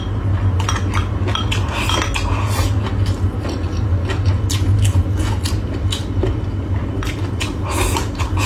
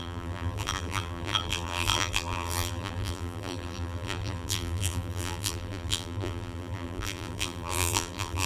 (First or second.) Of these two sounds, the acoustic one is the first